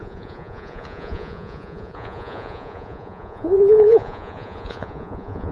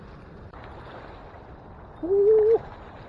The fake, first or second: first